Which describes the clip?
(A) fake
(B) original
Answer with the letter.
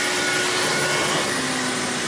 B